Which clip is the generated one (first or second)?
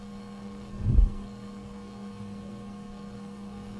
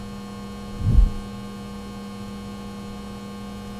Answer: first